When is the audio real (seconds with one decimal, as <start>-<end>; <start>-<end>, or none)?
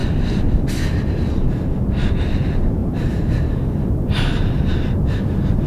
0.0-2.8; 5.2-5.7